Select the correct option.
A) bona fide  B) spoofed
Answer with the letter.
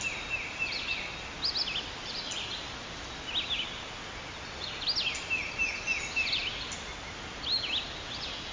A